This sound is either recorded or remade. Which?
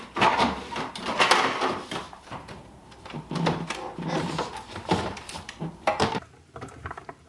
remade